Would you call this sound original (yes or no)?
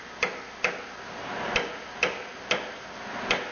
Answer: yes